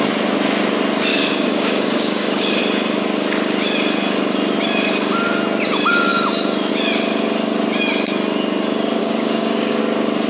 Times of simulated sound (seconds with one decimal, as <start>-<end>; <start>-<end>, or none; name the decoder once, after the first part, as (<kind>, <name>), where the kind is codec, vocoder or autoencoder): 1.1-2.6 (codec, DAC); 9.0-9.8